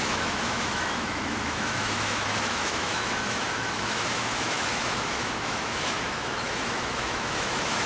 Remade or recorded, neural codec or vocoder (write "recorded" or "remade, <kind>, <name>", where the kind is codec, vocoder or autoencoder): remade, autoencoder, DAC-VAE